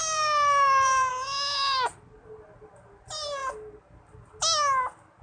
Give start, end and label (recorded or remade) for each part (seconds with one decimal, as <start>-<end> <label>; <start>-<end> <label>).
0.0-1.1 remade; 1.1-5.2 recorded